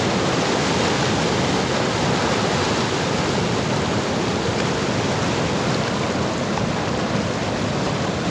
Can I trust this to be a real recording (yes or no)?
yes